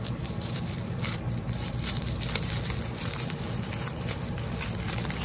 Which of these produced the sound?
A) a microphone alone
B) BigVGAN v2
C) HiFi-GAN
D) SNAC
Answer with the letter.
B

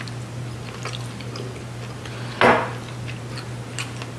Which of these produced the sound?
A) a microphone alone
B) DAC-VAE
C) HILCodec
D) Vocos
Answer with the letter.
A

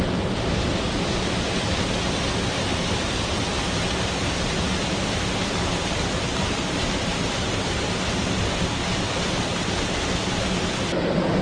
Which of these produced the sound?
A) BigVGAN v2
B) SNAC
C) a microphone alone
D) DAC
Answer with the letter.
C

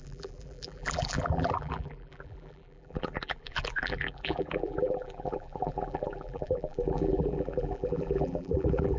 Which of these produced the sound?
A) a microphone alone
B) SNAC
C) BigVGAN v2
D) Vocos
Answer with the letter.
C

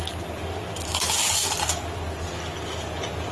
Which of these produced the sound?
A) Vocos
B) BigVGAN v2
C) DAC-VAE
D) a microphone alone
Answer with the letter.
D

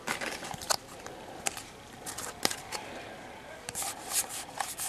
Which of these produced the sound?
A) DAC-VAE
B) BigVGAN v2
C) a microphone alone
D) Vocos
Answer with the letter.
B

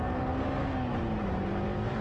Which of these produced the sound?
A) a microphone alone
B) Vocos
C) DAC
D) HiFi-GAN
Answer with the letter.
A